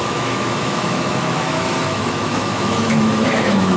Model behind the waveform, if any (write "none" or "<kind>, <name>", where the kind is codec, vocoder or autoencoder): autoencoder, DAC-VAE